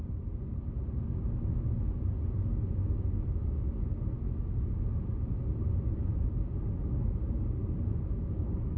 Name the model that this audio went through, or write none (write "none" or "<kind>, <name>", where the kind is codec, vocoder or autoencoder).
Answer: none